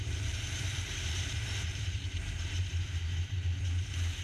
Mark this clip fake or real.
fake